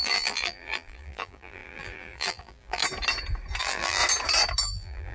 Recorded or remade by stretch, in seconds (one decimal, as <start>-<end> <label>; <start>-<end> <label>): 0.0-2.8 remade; 2.8-3.6 recorded; 3.6-4.0 remade; 4.0-4.6 recorded; 4.6-5.1 remade